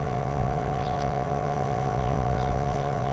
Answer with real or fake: fake